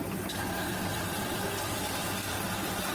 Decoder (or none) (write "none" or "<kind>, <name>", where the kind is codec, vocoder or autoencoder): vocoder, BigVGAN v2